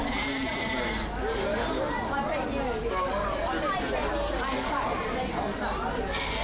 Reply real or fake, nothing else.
real